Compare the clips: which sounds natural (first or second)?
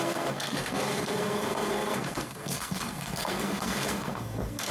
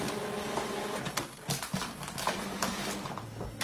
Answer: second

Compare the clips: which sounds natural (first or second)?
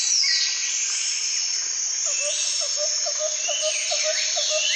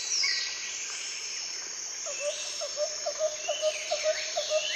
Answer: first